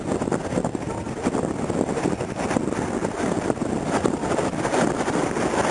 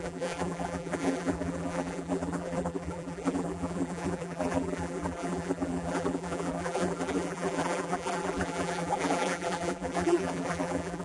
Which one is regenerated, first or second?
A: second